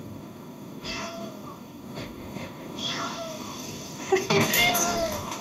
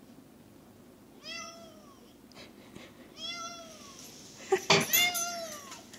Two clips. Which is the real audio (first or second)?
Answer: second